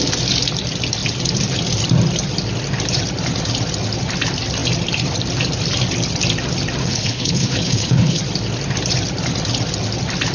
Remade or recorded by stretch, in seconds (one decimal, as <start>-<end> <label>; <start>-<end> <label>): 0.0-6.8 recorded; 6.8-8.2 remade; 8.2-10.3 recorded